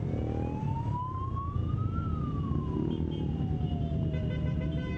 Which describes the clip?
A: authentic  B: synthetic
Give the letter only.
A